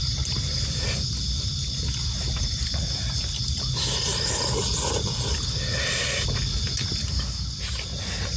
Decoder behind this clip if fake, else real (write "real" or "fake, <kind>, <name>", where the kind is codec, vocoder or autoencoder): real